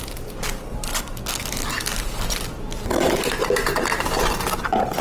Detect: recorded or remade recorded